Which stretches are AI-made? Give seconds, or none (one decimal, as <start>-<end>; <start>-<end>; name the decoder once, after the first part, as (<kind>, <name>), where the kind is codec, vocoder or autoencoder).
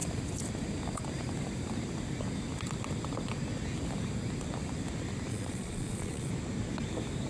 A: 5.3-6.3 (vocoder, Vocos)